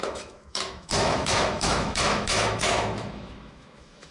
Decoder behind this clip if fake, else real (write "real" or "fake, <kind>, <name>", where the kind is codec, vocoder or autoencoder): fake, autoencoder, DAC-VAE